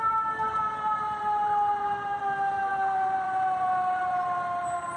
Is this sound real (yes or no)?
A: no